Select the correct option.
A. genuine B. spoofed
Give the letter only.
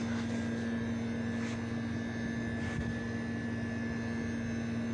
A